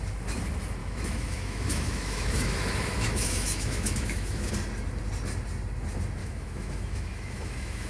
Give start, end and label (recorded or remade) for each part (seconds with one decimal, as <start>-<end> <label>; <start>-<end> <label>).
0.0-0.8 recorded; 0.8-4.5 remade; 4.5-6.2 recorded; 6.2-7.9 remade